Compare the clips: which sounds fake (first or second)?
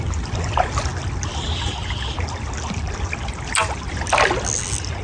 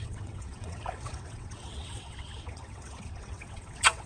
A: second